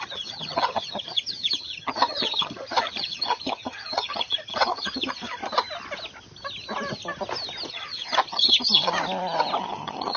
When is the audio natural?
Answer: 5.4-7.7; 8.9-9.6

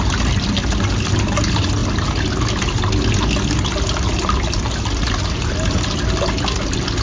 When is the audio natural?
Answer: 0.0-7.0